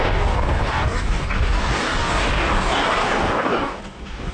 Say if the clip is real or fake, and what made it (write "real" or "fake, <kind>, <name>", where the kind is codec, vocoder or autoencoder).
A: fake, codec, DAC